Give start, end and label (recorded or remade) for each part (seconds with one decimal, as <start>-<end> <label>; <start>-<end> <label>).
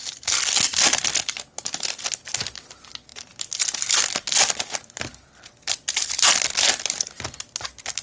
0.0-8.0 recorded